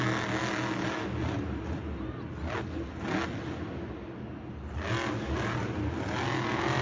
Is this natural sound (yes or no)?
yes